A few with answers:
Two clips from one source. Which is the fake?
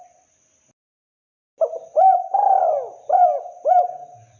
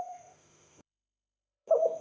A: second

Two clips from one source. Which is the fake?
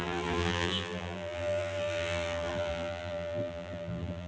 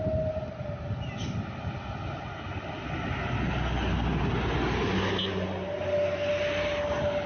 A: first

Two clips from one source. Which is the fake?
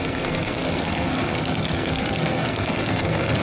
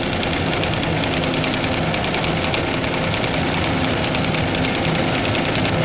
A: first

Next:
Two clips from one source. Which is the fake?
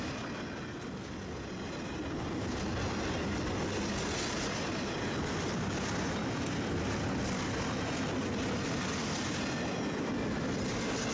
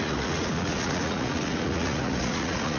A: second